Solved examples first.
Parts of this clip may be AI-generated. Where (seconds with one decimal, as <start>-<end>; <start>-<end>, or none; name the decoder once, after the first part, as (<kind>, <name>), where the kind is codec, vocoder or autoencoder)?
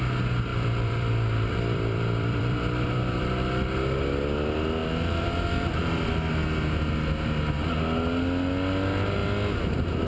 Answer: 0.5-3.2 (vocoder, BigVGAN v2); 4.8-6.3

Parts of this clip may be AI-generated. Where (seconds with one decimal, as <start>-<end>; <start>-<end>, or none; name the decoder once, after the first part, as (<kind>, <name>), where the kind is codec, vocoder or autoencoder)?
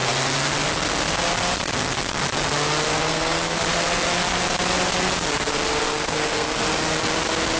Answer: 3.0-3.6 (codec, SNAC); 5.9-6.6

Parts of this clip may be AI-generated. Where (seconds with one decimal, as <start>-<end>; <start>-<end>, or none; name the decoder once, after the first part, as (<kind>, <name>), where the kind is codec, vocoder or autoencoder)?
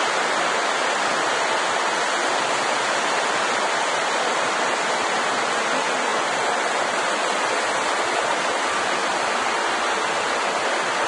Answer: none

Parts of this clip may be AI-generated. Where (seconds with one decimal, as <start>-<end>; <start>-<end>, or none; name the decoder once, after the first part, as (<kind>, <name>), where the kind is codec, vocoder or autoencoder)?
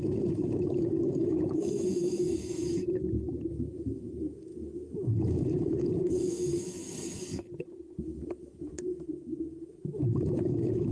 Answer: 0.0-2.7 (autoencoder, DAC-VAE); 3.5-6.8; 8.0-10.9